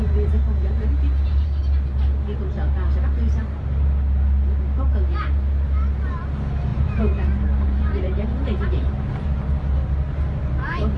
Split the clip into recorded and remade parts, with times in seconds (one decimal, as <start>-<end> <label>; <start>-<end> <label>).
0.0-1.6 remade; 1.6-6.7 recorded; 6.7-9.2 remade; 9.2-11.0 recorded